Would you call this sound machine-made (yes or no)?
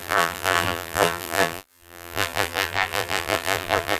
yes